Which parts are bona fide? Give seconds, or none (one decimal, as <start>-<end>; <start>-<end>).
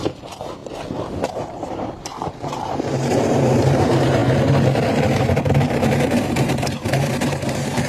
0.6-1.3; 4.2-4.9